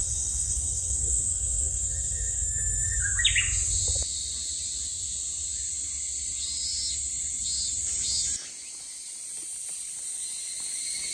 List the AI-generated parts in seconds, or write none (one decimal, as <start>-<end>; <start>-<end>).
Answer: 0.0-3.0